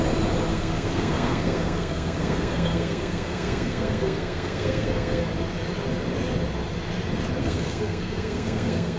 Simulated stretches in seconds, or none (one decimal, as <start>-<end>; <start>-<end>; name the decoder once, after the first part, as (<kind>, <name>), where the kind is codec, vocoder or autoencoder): 0.5-5.2 (codec, SNAC); 7.4-9.0